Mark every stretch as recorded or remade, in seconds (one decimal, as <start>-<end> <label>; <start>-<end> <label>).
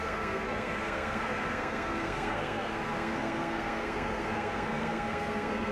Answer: 0.0-5.7 remade